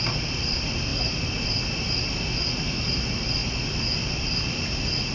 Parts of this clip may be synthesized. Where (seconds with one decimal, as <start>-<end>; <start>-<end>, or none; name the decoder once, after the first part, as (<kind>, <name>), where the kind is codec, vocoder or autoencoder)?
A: none